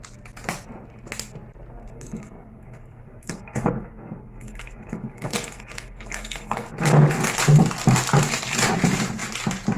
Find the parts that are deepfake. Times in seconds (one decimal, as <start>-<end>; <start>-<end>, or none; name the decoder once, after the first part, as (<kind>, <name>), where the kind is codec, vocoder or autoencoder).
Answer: 1.8-6.7 (codec, SNAC)